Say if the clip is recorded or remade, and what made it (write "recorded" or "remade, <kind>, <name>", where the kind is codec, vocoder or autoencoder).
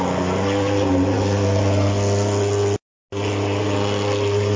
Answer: recorded